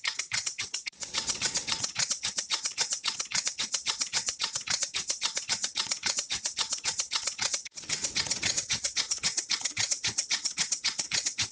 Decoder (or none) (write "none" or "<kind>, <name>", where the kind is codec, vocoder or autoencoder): vocoder, WaveNeXt